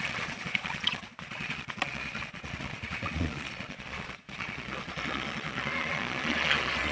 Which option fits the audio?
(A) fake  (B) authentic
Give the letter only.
A